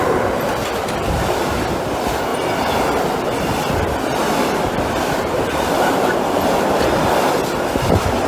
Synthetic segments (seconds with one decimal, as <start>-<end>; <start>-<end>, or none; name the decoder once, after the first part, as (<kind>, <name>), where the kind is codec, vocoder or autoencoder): none